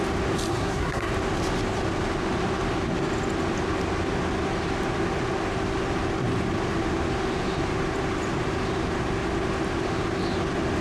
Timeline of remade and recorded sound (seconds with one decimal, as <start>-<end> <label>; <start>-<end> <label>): 0.0-0.5 recorded; 0.5-1.1 remade; 1.1-10.8 recorded